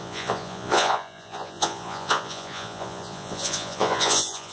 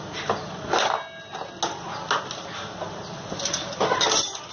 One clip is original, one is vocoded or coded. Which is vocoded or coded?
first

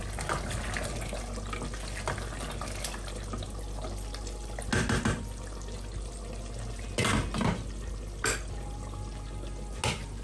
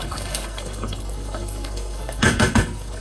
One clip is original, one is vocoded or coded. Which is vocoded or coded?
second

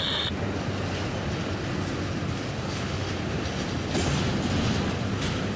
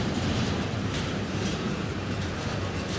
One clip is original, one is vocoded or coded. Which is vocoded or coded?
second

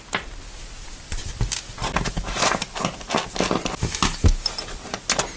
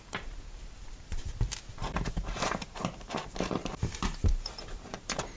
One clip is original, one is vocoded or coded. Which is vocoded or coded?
second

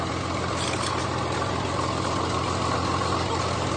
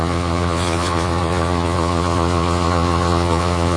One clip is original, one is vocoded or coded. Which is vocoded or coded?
second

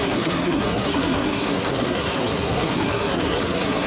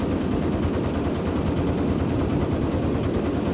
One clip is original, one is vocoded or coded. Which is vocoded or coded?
first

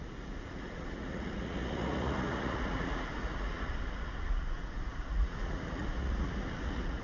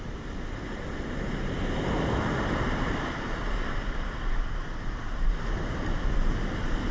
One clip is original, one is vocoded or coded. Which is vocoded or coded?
first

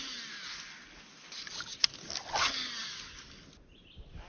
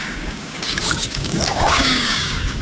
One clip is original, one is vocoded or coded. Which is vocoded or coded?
second